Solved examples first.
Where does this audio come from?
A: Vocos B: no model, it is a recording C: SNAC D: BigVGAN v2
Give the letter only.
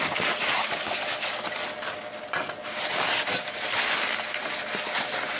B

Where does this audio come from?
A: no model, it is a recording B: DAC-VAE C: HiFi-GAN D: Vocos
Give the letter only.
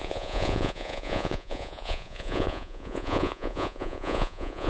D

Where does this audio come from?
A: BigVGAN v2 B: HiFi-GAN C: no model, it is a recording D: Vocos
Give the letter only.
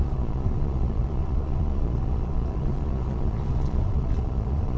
D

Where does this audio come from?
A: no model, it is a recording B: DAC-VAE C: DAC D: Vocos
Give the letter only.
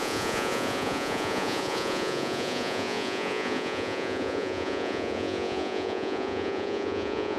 D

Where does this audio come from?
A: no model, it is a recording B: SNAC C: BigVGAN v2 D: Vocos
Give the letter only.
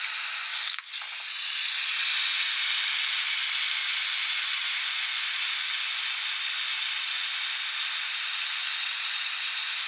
A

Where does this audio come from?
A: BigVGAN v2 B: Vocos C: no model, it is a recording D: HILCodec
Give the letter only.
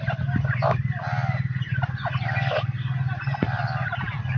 C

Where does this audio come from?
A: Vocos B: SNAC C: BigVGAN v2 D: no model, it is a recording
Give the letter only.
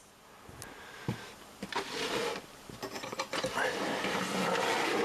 D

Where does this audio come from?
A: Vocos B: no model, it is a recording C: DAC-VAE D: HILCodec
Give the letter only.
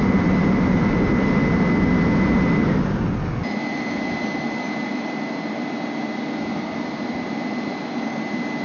B